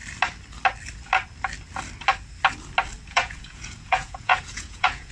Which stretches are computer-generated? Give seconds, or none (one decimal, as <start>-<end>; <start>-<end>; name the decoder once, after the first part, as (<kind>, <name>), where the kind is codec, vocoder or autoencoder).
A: 3.1-5.1 (vocoder, Vocos)